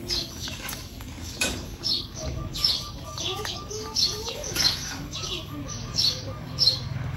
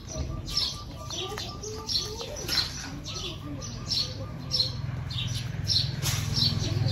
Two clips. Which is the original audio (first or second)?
second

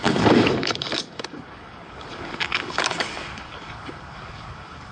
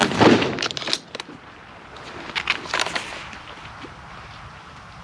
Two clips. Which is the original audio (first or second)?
second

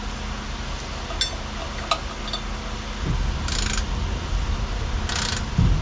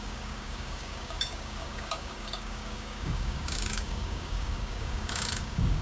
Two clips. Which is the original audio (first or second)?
first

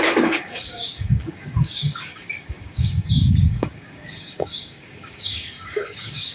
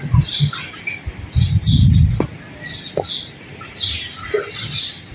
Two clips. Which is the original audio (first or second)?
second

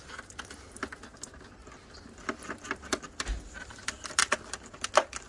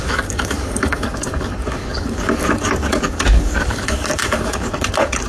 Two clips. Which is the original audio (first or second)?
first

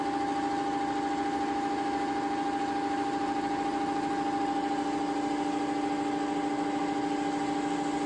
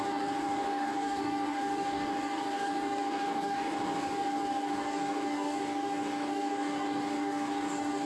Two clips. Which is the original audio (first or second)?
first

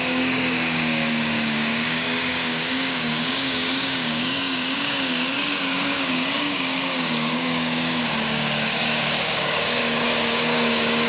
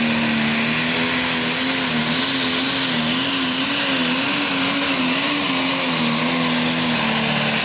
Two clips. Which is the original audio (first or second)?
second